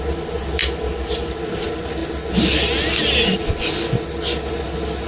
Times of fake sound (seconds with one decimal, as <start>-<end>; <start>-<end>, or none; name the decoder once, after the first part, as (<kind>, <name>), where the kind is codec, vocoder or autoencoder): 0.6-1.3 (vocoder, BigVGAN v2)